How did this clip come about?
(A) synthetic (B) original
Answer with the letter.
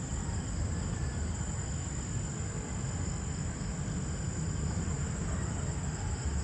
B